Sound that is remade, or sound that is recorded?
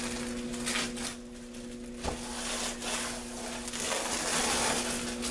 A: recorded